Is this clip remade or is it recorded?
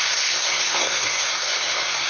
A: remade